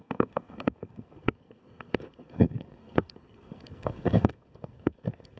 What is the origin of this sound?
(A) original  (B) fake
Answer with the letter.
B